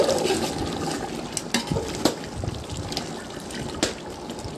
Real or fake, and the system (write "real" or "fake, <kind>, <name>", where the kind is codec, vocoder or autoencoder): real